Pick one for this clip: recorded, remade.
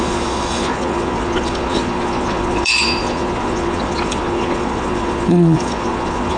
remade